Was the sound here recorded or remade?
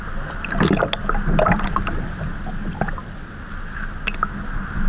recorded